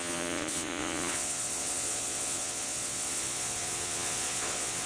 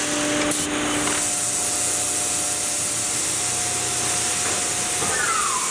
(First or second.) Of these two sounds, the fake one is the first